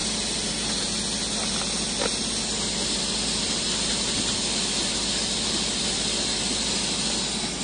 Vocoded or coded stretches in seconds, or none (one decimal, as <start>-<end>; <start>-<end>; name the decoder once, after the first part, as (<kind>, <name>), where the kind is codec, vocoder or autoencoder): none